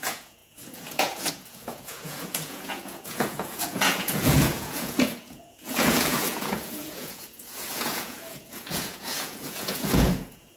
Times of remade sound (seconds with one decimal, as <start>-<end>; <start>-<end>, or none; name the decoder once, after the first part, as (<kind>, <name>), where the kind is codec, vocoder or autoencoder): 0.0-10.6 (vocoder, Vocos)